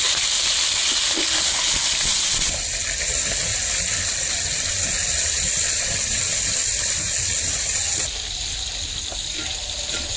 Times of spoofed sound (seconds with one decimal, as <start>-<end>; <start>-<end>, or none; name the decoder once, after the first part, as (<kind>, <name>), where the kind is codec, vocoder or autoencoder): none